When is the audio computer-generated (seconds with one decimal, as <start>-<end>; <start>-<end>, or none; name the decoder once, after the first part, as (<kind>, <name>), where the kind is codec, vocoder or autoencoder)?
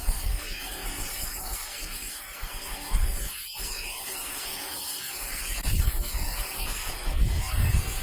0.0-8.0 (codec, SNAC)